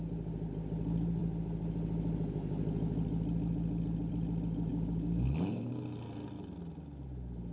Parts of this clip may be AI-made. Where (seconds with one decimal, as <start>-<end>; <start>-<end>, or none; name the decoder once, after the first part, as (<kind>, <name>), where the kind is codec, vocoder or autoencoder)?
4.7-5.7 (codec, DAC)

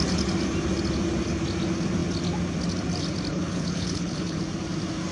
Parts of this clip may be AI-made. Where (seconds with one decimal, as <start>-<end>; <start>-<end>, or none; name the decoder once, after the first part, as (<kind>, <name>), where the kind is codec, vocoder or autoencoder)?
3.3-4.4 (codec, HILCodec)